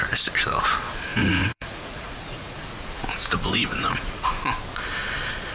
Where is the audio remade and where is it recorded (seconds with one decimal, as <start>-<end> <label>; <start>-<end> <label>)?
0.0-1.1 recorded; 1.1-4.4 remade; 4.4-5.5 recorded